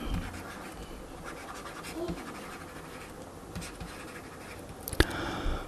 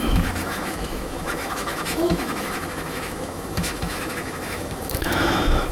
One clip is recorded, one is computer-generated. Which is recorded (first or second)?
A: first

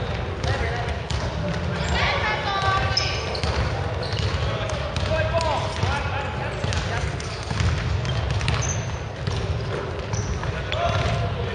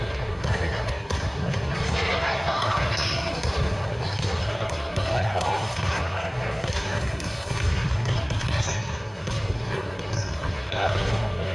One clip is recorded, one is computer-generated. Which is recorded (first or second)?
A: first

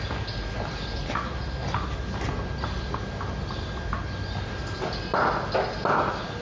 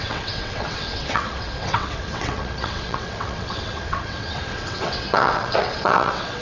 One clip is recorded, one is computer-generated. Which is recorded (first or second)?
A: first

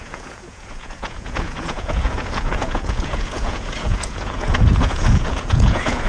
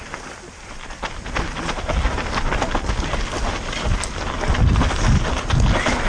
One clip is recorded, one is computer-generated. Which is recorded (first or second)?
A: second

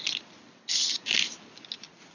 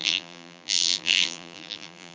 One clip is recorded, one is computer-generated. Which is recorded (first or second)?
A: first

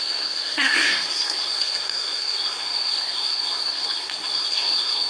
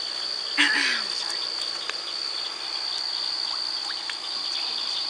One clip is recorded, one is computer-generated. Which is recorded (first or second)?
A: second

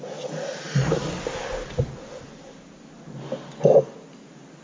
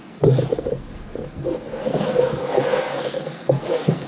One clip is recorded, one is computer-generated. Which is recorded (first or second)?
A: first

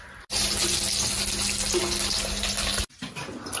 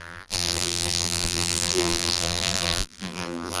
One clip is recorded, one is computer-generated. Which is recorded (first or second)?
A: first